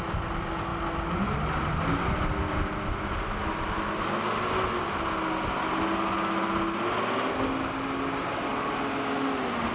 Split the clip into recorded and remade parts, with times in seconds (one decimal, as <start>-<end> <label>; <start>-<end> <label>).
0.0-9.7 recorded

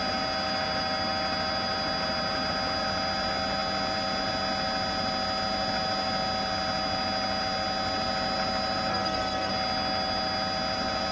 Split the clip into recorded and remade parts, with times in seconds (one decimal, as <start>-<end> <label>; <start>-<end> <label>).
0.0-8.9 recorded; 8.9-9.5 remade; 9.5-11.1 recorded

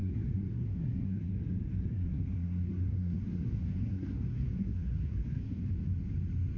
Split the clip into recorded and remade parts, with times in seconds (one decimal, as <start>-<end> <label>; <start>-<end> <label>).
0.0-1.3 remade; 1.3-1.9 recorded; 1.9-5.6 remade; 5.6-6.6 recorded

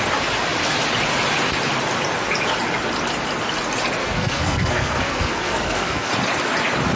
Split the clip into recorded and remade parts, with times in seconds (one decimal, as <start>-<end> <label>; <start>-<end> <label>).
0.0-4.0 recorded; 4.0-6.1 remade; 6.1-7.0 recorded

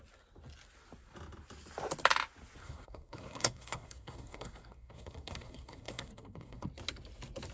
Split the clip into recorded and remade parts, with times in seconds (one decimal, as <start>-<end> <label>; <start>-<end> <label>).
0.0-2.6 recorded; 2.6-6.7 remade; 6.7-7.5 recorded

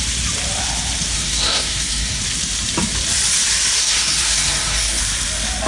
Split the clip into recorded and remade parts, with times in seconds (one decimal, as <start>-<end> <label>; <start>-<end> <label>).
0.0-1.1 recorded; 1.1-2.2 remade; 2.2-3.8 recorded; 3.8-5.0 remade; 5.0-5.7 recorded